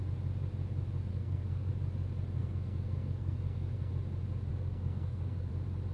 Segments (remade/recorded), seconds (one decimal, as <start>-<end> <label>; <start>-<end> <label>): 0.0-1.1 recorded; 1.1-1.7 remade; 1.7-2.4 recorded; 2.4-3.9 remade; 3.9-4.5 recorded; 4.5-5.5 remade; 5.5-5.9 recorded